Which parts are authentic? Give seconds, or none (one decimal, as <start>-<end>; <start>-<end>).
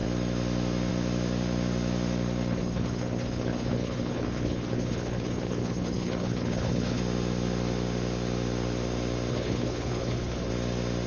0.0-2.5; 7.0-9.3; 10.5-11.1